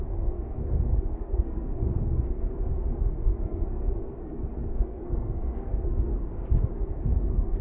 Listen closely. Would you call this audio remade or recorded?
remade